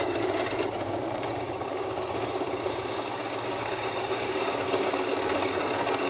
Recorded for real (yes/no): no